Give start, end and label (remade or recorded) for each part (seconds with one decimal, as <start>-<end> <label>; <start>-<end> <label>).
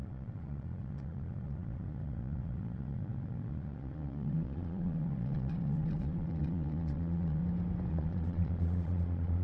0.0-7.4 remade; 7.4-7.9 recorded; 7.9-9.4 remade